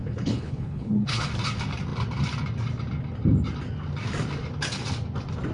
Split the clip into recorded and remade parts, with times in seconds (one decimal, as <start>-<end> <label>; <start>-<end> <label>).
0.0-1.2 remade; 1.2-5.5 recorded